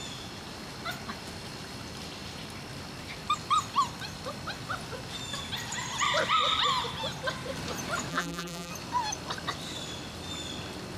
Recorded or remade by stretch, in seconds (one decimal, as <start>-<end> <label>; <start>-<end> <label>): 0.0-8.1 recorded; 8.1-8.7 remade; 8.7-11.0 recorded